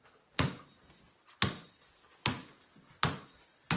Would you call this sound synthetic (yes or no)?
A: no